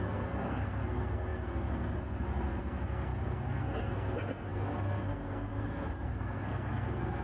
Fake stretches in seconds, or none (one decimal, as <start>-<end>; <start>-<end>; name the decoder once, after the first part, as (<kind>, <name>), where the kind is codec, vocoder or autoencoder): 0.0-7.2 (codec, SNAC)